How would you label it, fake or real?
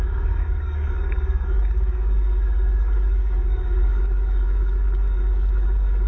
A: fake